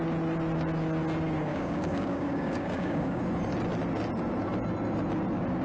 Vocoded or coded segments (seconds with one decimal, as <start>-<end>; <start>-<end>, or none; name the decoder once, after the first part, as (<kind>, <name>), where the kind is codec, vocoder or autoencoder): 1.5-3.2 (codec, DAC)